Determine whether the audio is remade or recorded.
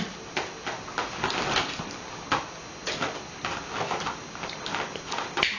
recorded